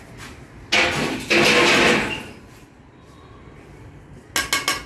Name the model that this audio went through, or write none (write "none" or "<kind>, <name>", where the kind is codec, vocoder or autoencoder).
none